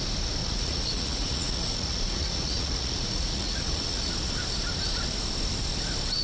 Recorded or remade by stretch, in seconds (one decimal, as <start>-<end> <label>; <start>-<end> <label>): 0.0-0.4 recorded; 0.4-4.1 remade; 4.1-6.2 recorded